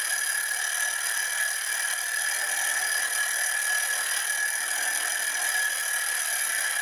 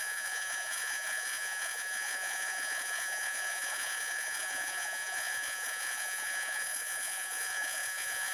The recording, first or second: first